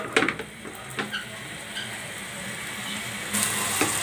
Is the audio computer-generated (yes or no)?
no